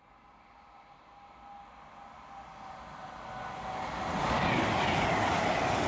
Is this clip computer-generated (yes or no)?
no